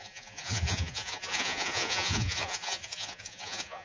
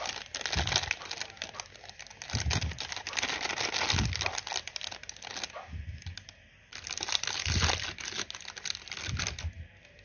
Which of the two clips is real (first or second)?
second